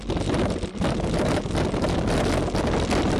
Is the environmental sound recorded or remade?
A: recorded